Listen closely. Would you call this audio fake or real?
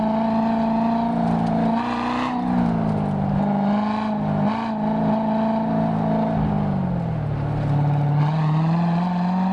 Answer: real